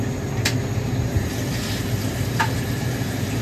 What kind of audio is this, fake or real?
real